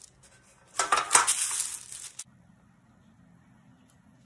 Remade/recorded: recorded